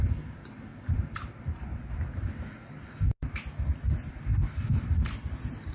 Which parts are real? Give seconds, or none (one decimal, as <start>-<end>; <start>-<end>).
0.0-5.7